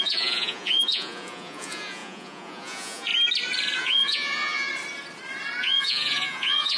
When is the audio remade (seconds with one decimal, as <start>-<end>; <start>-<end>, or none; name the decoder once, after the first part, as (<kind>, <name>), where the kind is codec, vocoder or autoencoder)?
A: 0.0-3.1 (vocoder, Vocos); 3.8-4.7; 5.6-6.8